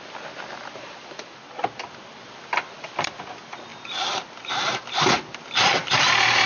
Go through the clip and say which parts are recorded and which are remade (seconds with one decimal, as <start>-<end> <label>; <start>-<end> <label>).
0.0-6.5 recorded